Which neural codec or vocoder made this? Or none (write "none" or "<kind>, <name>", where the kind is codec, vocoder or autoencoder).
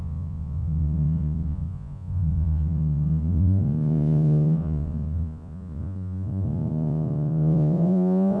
vocoder, Vocos